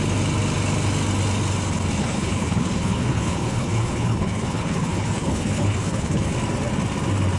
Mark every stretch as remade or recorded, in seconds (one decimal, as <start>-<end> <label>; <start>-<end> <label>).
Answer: 0.0-2.0 recorded; 2.0-6.3 remade; 6.3-7.4 recorded